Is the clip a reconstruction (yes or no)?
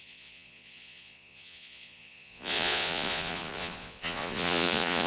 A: yes